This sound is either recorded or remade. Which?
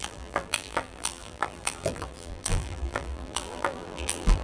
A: remade